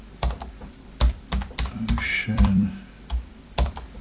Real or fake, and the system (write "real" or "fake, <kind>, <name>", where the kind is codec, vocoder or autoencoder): fake, vocoder, BigVGAN v2